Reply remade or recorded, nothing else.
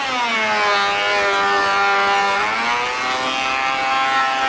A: recorded